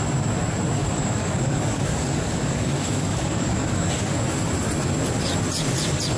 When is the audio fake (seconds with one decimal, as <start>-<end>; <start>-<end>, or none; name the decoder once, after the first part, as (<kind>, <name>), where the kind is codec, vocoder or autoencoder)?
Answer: 0.8-4.2 (codec, DAC)